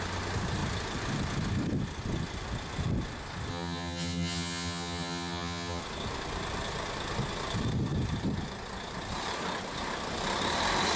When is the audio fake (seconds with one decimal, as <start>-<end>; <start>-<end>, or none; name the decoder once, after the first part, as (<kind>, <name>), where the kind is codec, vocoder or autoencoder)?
3.5-5.8 (vocoder, HiFi-GAN)